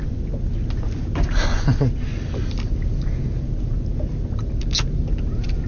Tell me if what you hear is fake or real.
real